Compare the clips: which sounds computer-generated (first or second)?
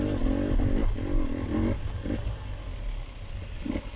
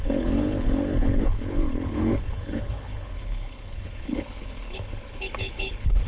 second